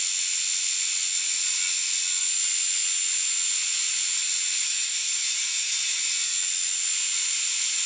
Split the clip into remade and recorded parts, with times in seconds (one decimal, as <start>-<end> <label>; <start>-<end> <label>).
0.0-4.6 recorded; 4.6-6.0 remade; 6.0-7.9 recorded